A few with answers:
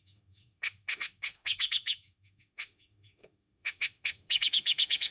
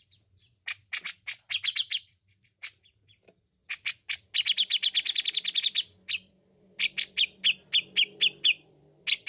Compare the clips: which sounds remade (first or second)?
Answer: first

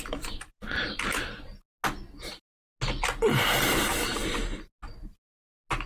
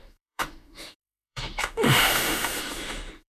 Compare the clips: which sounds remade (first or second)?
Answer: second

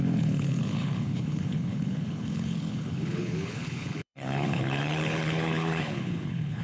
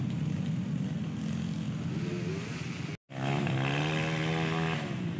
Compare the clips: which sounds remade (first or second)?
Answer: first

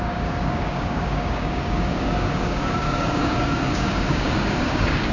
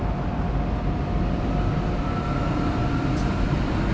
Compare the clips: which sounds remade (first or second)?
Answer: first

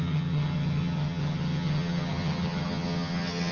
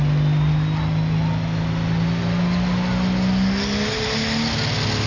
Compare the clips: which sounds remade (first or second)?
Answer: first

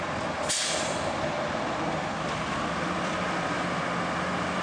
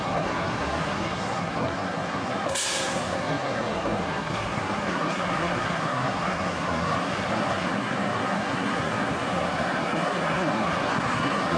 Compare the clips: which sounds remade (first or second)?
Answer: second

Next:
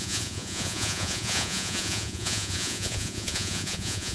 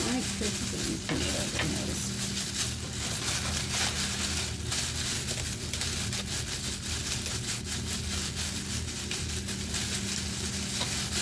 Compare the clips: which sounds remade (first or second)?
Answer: first